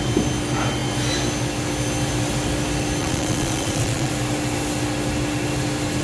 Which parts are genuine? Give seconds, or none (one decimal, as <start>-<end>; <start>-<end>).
0.0-3.0; 4.1-6.0